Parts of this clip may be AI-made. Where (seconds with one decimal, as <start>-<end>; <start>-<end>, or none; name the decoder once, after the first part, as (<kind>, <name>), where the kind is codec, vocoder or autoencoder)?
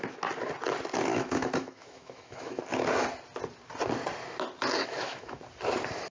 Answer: 1.1-2.6 (autoencoder, DAC-VAE); 4.8-5.4